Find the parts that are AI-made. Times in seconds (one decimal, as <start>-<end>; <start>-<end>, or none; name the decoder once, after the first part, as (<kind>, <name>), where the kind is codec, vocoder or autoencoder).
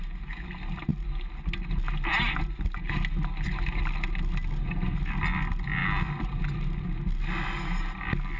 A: none